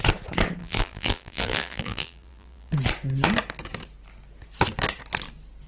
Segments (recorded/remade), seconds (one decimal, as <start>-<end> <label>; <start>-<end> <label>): 0.0-0.6 recorded; 0.6-2.7 remade; 2.7-5.7 recorded